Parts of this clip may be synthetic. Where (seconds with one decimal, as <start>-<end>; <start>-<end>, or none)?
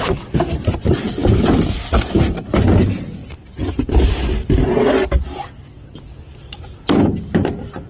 3.2-4.1